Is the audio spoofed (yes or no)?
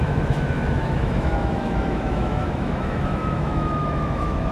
yes